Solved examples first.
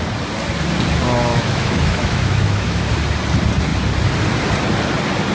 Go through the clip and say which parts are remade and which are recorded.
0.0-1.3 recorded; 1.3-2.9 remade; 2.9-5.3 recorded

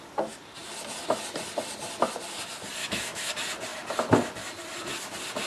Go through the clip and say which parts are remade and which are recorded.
0.0-2.8 recorded; 2.8-3.3 remade; 3.3-5.5 recorded

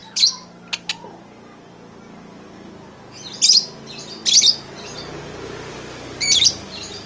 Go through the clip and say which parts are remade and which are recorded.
0.0-7.1 recorded